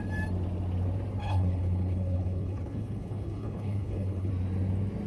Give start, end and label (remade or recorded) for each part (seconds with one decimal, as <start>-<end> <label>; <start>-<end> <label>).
0.0-1.2 recorded; 1.2-4.3 remade; 4.3-5.1 recorded